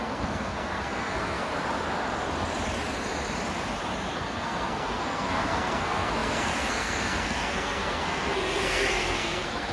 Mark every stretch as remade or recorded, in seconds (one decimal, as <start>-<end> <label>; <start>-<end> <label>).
0.0-1.5 remade; 1.5-4.1 recorded; 4.1-9.7 remade